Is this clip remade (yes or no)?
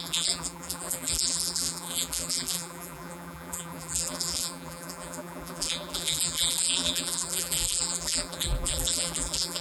yes